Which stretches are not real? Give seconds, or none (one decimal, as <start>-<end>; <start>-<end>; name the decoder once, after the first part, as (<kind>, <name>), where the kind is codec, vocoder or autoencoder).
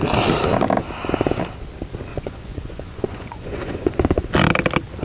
2.1-4.3 (vocoder, Vocos)